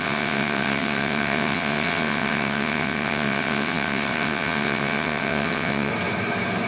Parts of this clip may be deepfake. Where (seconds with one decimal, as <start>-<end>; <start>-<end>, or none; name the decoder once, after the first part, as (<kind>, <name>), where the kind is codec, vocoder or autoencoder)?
0.0-5.9 (vocoder, WaveNeXt)

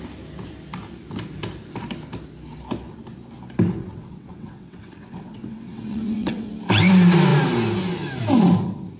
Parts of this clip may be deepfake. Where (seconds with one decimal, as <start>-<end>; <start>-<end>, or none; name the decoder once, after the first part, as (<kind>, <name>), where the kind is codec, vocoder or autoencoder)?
3.8-6.5 (vocoder, WaveNeXt)

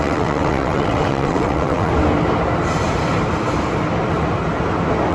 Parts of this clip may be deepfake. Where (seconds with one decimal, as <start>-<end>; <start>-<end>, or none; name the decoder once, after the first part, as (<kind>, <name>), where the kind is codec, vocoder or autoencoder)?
0.0-1.9 (vocoder, WaveNeXt)

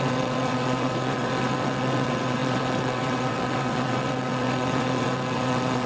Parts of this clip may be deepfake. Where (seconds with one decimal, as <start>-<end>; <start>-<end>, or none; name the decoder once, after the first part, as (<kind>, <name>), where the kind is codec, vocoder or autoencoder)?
0.0-5.9 (vocoder, WaveNeXt)

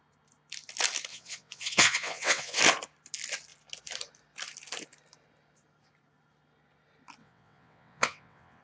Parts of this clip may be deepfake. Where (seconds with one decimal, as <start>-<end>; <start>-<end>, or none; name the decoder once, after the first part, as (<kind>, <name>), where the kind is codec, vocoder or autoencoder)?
1.1-2.6 (vocoder, WaveNeXt); 7.2-8.6

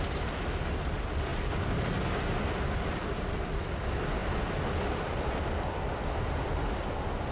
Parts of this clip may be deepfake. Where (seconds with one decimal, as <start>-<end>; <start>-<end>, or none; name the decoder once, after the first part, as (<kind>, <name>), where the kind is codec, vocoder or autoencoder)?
none

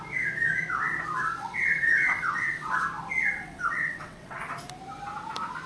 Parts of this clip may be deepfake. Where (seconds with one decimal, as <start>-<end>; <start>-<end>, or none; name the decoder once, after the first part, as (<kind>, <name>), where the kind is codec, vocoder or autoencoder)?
1.2-2.7 (vocoder, WaveNeXt); 3.2-4.4